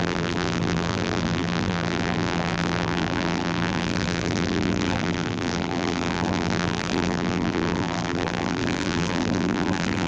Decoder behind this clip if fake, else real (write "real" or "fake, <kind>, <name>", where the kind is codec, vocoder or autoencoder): fake, vocoder, BigVGAN v2